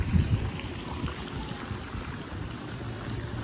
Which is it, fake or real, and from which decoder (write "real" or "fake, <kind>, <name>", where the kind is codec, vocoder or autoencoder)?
fake, vocoder, BigVGAN v2